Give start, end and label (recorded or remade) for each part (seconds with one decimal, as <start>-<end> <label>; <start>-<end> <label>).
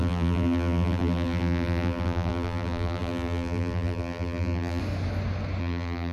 0.0-4.8 remade; 4.8-5.6 recorded; 5.6-6.1 remade